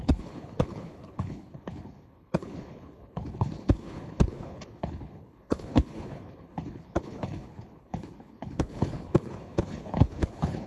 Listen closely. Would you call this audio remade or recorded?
remade